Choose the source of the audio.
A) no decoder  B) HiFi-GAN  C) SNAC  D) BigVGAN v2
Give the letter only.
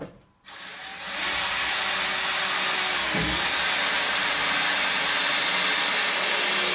A